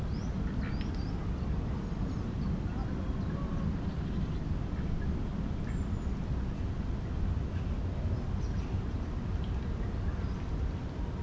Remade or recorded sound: recorded